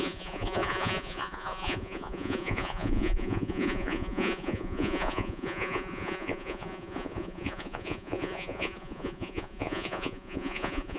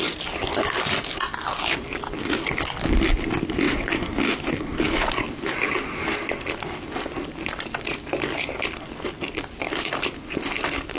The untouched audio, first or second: second